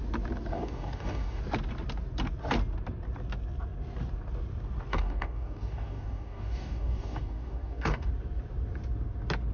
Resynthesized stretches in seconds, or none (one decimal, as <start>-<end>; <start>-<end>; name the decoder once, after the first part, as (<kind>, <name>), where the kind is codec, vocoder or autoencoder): 0.5-1.4 (codec, DAC); 4.9-8.1